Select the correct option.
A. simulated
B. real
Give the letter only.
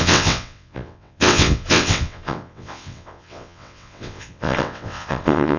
A